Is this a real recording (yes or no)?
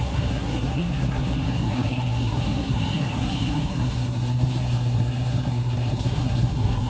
no